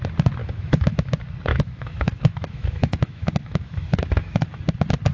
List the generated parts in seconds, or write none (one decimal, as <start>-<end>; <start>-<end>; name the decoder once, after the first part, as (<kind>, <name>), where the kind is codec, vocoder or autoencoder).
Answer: 0.4-1.1 (autoencoder, DAC-VAE); 1.5-4.6